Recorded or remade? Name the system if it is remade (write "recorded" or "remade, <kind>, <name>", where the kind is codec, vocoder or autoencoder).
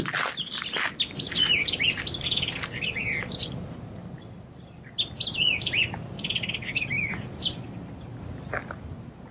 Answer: recorded